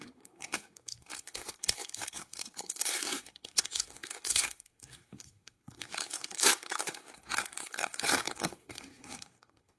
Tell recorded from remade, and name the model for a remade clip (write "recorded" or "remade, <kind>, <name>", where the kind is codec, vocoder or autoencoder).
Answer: remade, codec, SNAC